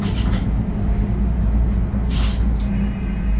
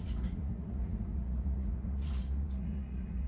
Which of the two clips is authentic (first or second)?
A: first